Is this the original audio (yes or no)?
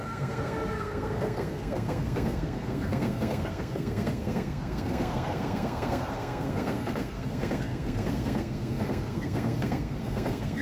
no